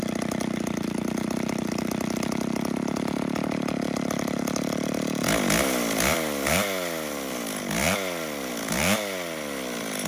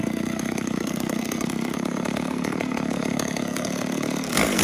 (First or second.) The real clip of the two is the first